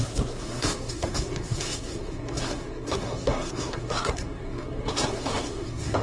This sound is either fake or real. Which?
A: fake